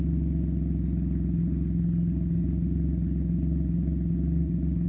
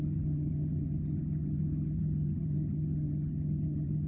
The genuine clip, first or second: first